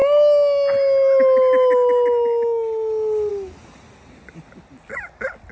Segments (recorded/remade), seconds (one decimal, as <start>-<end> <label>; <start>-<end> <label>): 0.0-5.5 recorded